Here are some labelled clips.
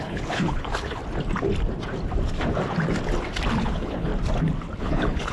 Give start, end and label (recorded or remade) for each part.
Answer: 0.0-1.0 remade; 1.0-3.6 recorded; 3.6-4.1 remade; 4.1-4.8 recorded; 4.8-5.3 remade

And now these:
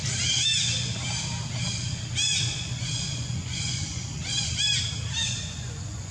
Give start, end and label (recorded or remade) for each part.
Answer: 0.0-2.2 recorded; 2.2-4.5 remade; 4.5-5.2 recorded; 5.2-6.1 remade

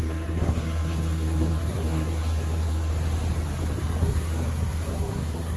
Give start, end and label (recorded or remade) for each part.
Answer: 0.0-2.9 remade; 2.9-4.0 recorded; 4.0-5.6 remade

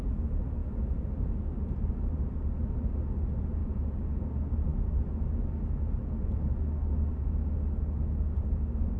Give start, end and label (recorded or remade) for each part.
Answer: 0.0-3.6 recorded; 3.6-4.2 remade; 4.2-9.0 recorded